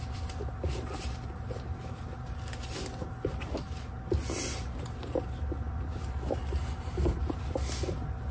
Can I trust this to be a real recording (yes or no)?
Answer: yes